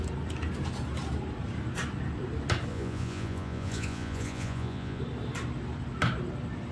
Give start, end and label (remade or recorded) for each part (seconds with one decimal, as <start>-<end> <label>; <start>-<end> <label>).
0.0-2.7 recorded; 2.7-5.0 remade; 5.0-6.7 recorded